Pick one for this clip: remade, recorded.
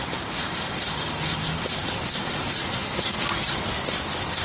recorded